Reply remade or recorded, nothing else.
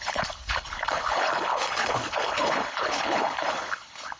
remade